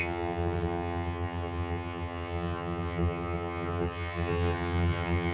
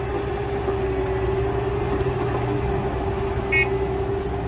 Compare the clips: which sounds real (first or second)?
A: second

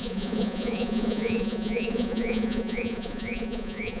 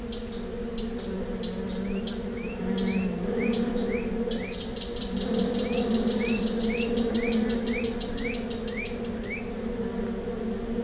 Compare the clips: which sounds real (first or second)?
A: second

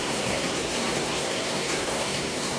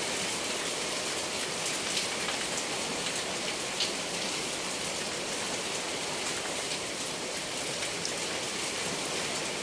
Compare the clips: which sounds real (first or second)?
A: second